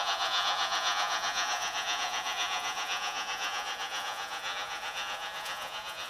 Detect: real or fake fake